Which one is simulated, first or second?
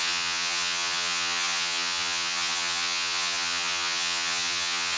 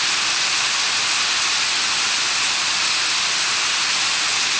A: first